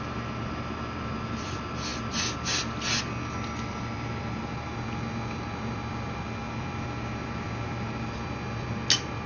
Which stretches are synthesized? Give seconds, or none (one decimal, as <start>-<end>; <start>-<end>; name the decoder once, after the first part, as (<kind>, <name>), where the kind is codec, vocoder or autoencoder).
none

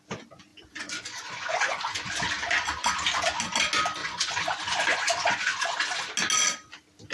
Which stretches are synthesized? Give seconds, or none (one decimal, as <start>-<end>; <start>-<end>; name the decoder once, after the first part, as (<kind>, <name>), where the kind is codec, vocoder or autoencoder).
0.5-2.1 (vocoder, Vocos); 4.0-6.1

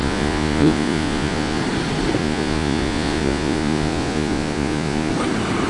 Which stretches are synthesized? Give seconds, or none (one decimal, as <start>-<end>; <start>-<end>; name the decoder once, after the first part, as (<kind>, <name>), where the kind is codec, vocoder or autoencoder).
0.0-1.6 (vocoder, Vocos); 2.2-5.1

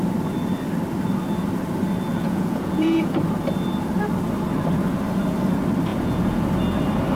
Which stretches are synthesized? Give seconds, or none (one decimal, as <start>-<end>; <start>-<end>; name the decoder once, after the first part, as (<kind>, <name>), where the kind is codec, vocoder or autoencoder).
2.1-3.1 (vocoder, Vocos); 5.9-6.4

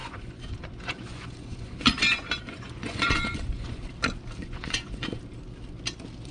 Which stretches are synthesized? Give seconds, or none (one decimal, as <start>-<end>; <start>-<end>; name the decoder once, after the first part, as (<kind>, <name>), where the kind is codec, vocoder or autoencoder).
0.0-3.8 (vocoder, Vocos); 4.4-5.2

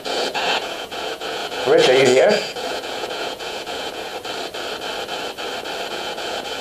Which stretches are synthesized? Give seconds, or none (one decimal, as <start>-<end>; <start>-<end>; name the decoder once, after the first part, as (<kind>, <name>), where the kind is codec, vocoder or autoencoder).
0.0-4.1 (vocoder, Vocos); 5.9-6.6

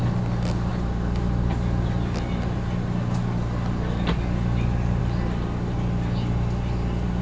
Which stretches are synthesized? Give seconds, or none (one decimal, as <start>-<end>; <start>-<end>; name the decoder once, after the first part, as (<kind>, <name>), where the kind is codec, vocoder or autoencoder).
none

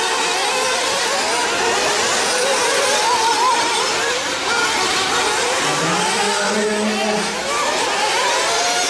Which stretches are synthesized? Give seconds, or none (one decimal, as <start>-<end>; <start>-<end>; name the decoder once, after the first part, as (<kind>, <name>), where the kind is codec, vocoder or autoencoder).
none